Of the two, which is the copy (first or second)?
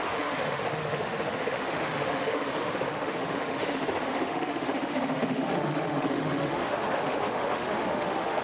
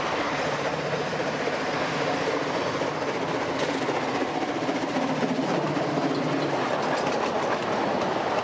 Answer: first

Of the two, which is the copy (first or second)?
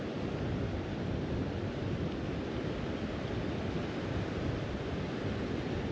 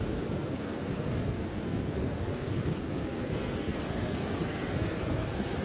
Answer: second